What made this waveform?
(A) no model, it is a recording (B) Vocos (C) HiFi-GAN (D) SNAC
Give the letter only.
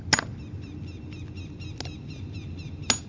A